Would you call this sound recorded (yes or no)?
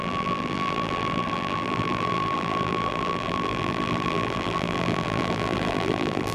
no